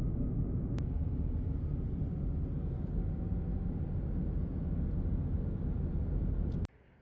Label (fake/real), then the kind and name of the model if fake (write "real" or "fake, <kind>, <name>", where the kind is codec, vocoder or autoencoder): real